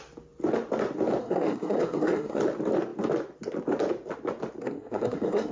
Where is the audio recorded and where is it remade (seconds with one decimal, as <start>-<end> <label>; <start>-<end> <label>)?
0.0-1.2 recorded; 1.2-2.4 remade; 2.4-4.6 recorded; 4.6-5.5 remade